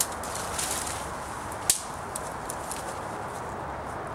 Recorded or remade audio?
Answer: recorded